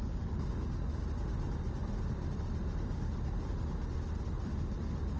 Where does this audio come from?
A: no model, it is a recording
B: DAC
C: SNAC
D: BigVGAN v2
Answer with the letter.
A